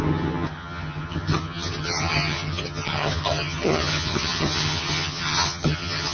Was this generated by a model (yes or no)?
yes